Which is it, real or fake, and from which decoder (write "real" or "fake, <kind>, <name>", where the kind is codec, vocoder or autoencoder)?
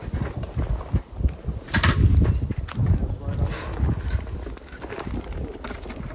real